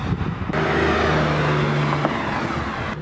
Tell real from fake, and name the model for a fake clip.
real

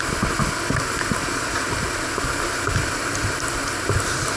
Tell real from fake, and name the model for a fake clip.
real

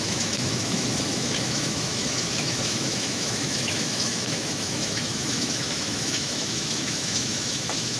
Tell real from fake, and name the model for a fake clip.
fake, autoencoder, DAC-VAE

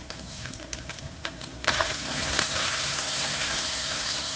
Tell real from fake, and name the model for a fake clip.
fake, codec, SNAC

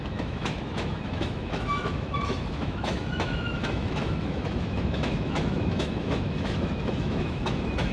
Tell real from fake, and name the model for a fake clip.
fake, autoencoder, DAC-VAE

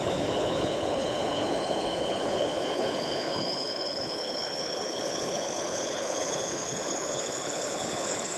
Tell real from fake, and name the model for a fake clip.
fake, codec, HILCodec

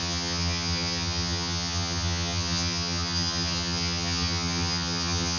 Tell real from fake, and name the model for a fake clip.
fake, vocoder, HiFi-GAN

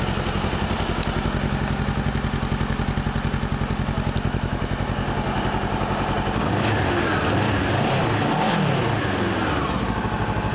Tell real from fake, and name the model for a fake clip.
real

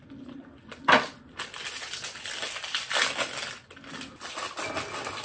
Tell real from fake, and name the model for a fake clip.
real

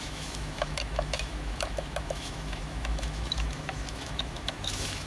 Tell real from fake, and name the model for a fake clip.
fake, autoencoder, DAC-VAE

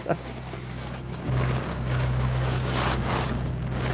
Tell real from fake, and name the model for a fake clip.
fake, codec, DAC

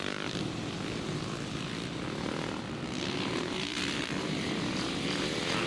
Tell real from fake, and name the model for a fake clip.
fake, vocoder, BigVGAN v2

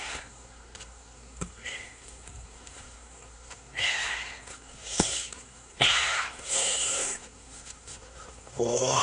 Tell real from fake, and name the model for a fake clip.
fake, codec, SNAC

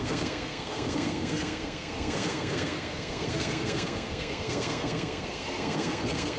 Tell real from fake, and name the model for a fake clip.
fake, codec, SNAC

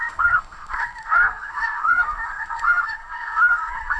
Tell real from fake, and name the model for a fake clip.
fake, codec, SNAC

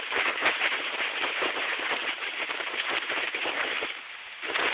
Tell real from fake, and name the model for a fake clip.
fake, vocoder, BigVGAN v2